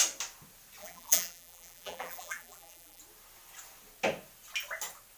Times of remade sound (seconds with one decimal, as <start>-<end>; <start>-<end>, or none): 0.8-3.0